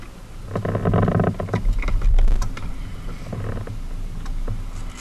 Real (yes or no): yes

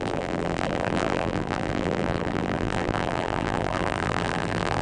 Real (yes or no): no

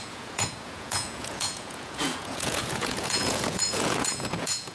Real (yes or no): no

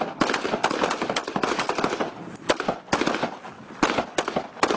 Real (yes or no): yes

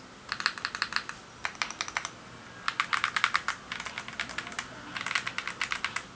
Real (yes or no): yes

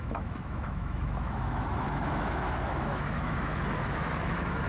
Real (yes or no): no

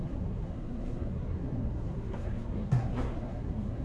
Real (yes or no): no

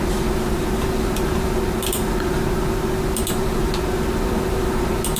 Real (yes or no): yes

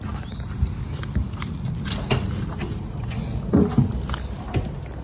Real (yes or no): yes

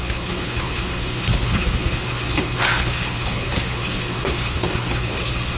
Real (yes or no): no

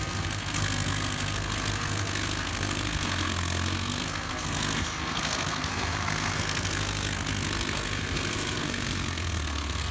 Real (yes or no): no